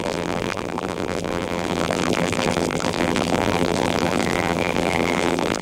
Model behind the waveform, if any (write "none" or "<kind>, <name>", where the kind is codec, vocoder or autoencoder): vocoder, BigVGAN v2